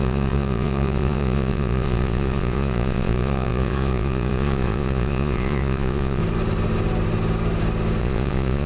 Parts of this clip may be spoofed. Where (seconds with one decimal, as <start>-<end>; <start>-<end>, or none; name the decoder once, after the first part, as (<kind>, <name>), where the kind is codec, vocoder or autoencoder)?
0.0-6.2 (vocoder, Vocos); 8.0-8.7